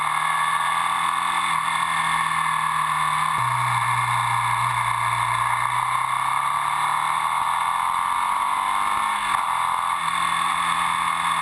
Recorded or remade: recorded